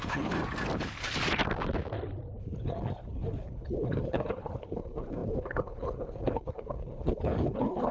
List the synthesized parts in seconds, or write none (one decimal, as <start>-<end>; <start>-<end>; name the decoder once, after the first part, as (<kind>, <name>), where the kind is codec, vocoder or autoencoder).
0.0-0.4 (codec, HILCodec); 2.4-7.9